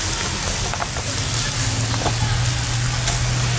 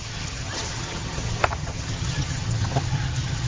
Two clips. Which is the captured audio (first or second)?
first